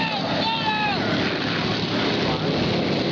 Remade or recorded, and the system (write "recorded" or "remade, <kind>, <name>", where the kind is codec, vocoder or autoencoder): remade, vocoder, BigVGAN v2